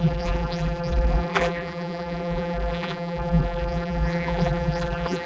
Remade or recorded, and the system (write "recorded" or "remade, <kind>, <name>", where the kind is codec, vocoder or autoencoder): remade, vocoder, BigVGAN v2